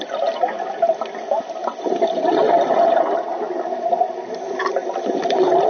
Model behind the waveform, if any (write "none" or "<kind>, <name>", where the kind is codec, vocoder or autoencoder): none